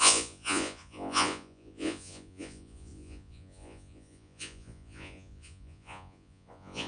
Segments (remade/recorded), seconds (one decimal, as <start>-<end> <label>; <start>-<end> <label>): 0.0-6.9 remade

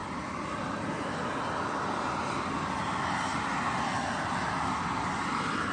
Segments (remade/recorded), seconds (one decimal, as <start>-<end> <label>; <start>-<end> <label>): 0.0-5.7 recorded

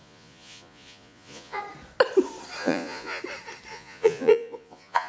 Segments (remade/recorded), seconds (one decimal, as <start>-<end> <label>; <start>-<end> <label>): 0.0-1.6 remade; 1.6-2.6 recorded; 2.6-3.2 remade; 3.2-3.7 recorded; 3.7-5.1 remade

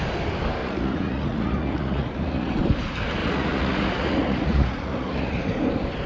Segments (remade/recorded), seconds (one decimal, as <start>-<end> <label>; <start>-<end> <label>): 0.0-0.6 recorded; 0.6-2.5 remade; 2.5-3.2 recorded; 3.2-5.4 remade; 5.4-6.1 recorded

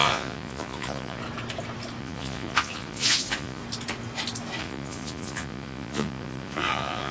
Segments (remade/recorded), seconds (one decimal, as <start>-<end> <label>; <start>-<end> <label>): 0.0-1.2 remade; 1.2-2.0 recorded; 2.0-3.6 remade; 3.6-4.6 recorded; 4.6-7.1 remade